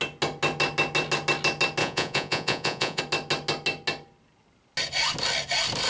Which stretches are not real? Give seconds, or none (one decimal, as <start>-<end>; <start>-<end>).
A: 1.8-3.0